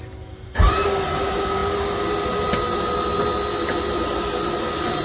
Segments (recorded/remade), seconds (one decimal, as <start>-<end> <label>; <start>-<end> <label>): 0.0-5.0 recorded